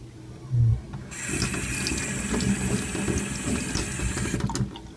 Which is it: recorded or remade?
recorded